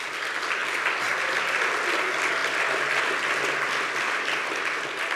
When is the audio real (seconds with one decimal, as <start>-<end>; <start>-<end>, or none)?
0.0-5.2